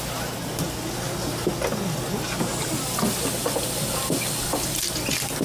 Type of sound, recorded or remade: recorded